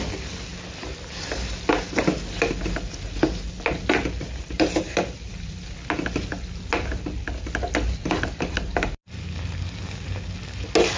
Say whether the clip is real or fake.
real